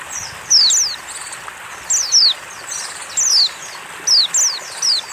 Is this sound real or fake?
real